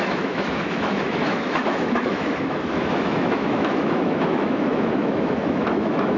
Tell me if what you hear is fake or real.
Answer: fake